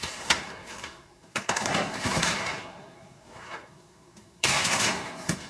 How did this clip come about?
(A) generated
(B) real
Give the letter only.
A